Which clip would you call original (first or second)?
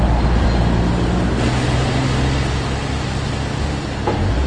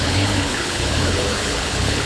first